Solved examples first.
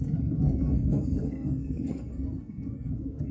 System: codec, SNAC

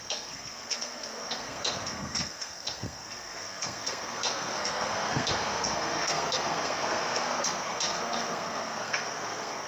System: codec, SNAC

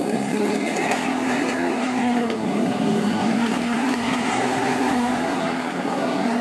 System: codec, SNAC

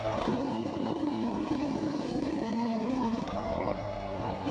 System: codec, SNAC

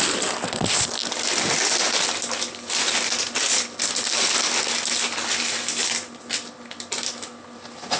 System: none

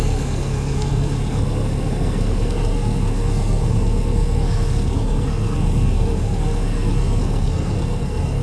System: codec, SNAC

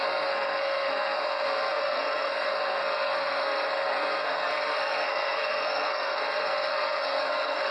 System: codec, SNAC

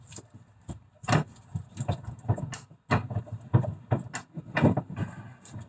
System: none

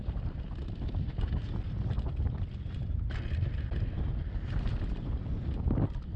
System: none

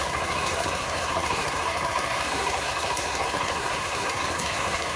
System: codec, SNAC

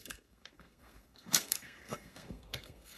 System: codec, SNAC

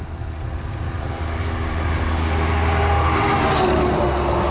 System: none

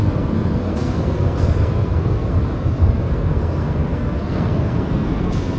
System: codec, SNAC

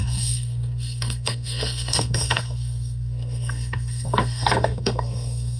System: codec, SNAC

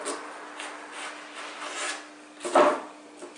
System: none